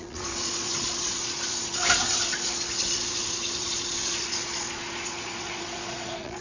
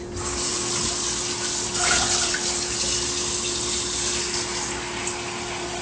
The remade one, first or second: first